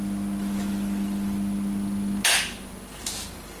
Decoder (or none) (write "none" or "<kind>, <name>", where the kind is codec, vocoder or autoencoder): none